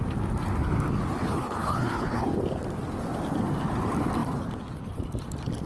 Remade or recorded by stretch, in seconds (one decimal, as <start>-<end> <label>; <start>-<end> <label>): 0.0-1.2 recorded; 1.2-2.3 remade; 2.3-5.7 recorded